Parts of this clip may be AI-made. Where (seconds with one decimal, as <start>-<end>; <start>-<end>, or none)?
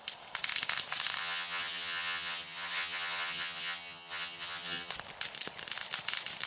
1.2-4.9